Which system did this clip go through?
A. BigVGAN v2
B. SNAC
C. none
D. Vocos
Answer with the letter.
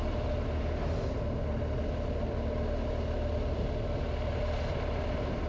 C